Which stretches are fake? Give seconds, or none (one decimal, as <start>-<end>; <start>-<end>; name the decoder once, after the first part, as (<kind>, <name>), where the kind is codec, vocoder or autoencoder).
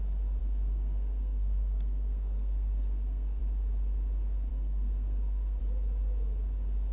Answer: 0.4-3.4 (codec, SNAC); 4.5-5.6